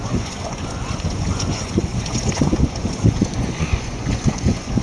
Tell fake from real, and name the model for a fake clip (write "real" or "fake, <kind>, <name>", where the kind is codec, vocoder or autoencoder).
fake, vocoder, Vocos